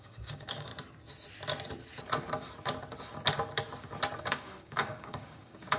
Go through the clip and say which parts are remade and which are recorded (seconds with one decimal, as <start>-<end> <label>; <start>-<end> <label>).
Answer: 0.0-0.7 remade; 0.7-4.2 recorded; 4.2-5.8 remade